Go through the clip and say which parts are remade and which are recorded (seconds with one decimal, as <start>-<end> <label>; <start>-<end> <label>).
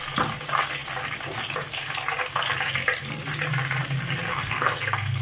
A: 0.0-4.3 recorded; 4.3-5.2 remade